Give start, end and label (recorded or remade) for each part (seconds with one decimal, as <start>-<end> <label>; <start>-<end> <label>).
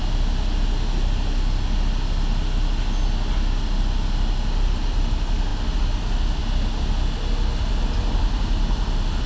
0.0-9.3 recorded